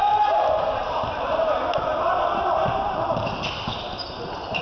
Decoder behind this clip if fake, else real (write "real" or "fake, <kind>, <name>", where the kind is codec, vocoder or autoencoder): real